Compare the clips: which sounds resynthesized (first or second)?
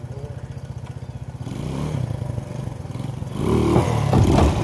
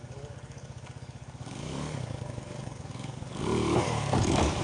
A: second